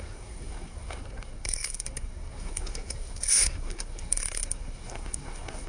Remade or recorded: remade